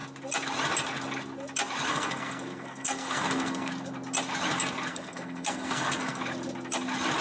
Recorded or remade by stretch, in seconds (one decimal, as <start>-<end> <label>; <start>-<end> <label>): 0.0-1.9 recorded; 1.9-3.7 remade; 3.7-4.9 recorded; 4.9-6.2 remade; 6.2-7.2 recorded